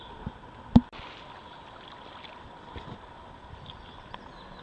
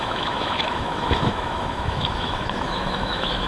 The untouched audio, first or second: first